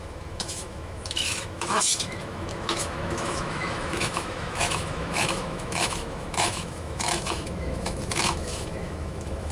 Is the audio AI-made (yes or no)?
yes